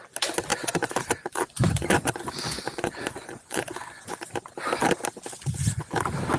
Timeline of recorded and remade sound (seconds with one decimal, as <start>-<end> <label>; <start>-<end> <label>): 0.0-0.5 recorded; 0.5-4.3 remade; 4.3-6.4 recorded